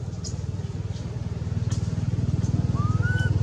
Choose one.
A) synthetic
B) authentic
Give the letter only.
B